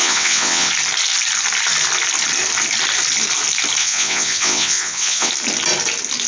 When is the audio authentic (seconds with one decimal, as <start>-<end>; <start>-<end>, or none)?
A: 0.7-3.8; 5.3-6.3